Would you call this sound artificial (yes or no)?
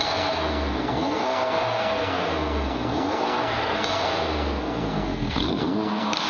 yes